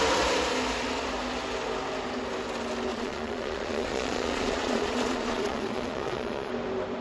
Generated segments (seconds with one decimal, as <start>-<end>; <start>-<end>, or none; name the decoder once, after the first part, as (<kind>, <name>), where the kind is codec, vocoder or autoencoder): 2.9-6.5 (vocoder, Vocos)

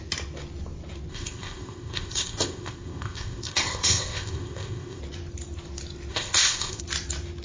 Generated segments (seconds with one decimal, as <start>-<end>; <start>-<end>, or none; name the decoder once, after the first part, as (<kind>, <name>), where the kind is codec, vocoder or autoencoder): 1.1-5.0 (codec, ZipCodec); 6.1-6.8

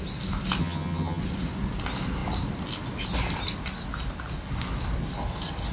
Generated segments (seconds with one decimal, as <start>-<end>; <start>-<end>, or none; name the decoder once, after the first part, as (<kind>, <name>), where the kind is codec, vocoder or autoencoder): 0.6-1.2 (vocoder, HiFi-GAN)

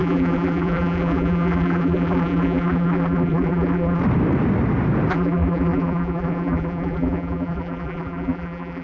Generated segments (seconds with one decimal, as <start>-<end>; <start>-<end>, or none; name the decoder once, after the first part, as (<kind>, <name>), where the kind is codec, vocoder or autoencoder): 0.0-4.0 (vocoder, BigVGAN v2); 5.1-8.8